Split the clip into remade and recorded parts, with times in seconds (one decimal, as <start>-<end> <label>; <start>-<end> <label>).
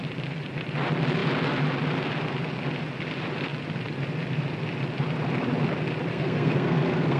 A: 0.0-6.1 recorded; 6.1-7.2 remade